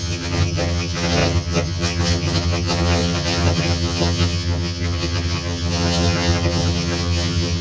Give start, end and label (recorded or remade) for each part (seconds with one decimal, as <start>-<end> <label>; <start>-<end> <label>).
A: 0.0-7.6 remade